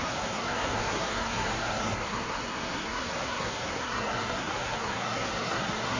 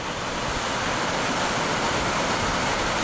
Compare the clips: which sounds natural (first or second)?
second